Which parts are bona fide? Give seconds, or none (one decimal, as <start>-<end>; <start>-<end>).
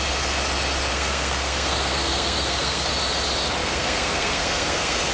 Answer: 0.0-0.9; 2.9-3.6